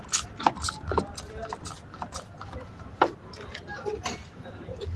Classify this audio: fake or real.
real